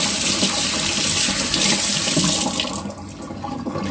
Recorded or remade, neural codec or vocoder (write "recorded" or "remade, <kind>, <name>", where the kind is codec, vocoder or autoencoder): recorded